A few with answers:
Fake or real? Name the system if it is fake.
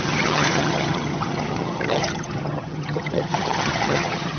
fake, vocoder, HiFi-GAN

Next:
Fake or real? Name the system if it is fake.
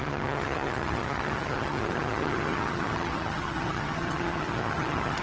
fake, vocoder, HiFi-GAN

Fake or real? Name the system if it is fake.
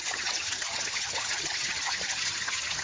fake, vocoder, HiFi-GAN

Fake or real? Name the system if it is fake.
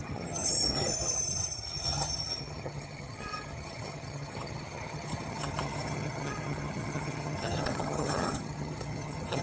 fake, vocoder, HiFi-GAN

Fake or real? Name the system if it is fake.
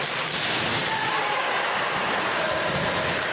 real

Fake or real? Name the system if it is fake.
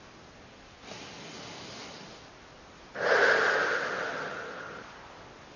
real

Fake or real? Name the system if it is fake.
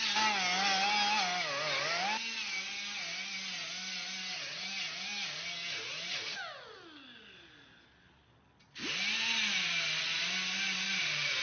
real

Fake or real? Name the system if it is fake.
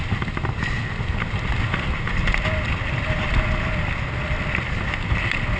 real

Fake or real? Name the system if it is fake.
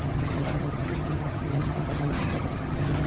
fake, vocoder, HiFi-GAN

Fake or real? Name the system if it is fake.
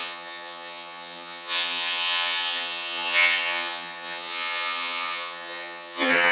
fake, vocoder, HiFi-GAN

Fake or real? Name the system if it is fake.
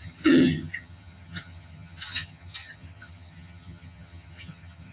fake, vocoder, HiFi-GAN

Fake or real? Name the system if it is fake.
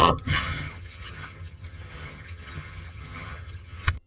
fake, vocoder, HiFi-GAN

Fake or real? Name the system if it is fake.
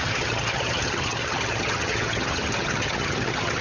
fake, vocoder, HiFi-GAN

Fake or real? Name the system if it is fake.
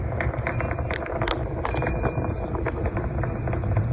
real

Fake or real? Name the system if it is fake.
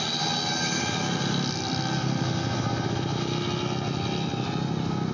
real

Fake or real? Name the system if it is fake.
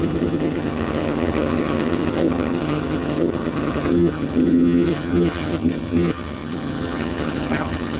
fake, vocoder, HiFi-GAN